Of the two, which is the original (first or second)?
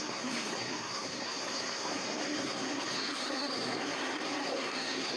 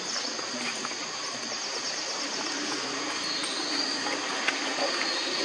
second